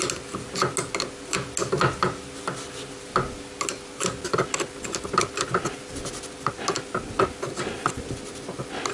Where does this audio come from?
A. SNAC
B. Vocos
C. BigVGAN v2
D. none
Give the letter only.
D